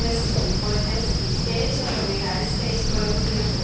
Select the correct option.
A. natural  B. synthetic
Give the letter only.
A